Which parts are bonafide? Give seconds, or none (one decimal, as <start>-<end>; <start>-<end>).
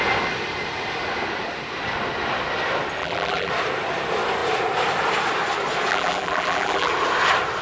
0.0-3.0; 3.5-5.9; 6.9-7.6